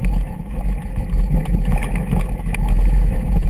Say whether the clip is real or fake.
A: fake